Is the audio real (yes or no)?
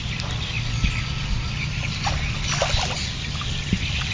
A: yes